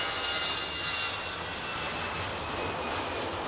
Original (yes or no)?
yes